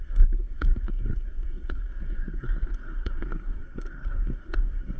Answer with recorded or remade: remade